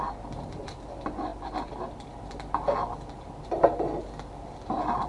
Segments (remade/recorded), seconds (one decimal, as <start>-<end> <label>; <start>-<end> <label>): 0.0-5.1 recorded